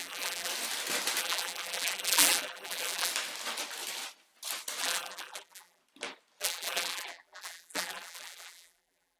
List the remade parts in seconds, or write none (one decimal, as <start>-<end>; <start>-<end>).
0.0-0.5; 1.2-3.1; 4.8-5.8; 6.4-9.2